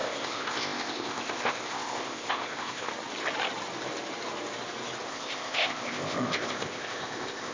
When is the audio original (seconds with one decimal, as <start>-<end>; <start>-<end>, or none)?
2.9-5.1